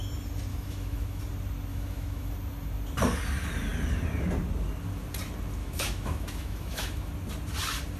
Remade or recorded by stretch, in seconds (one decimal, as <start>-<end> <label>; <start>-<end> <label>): 0.0-0.5 recorded; 0.5-1.2 remade; 1.2-1.7 recorded; 1.7-2.3 remade; 2.3-5.6 recorded; 5.6-7.1 remade; 7.1-8.0 recorded